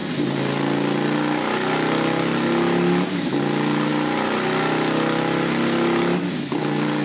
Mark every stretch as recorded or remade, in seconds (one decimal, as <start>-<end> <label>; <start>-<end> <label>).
0.0-7.0 recorded